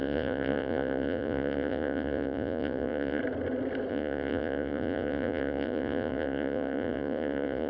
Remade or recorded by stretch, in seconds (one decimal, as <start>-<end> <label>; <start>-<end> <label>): 0.0-3.2 remade; 3.2-3.9 recorded; 3.9-7.7 remade